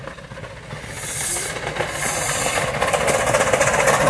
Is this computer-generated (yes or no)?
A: no